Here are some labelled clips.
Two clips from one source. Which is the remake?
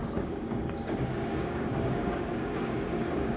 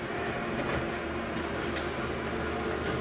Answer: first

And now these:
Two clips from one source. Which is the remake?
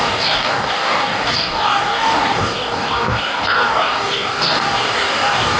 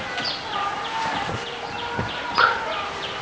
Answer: first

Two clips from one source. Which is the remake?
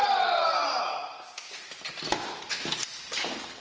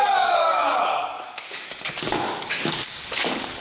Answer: second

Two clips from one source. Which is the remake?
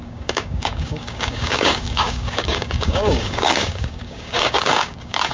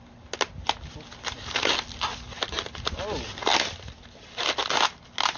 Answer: first